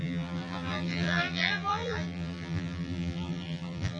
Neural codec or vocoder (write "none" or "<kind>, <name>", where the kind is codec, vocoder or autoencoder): vocoder, BigVGAN v2